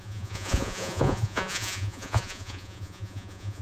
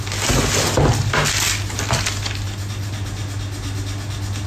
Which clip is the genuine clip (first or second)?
second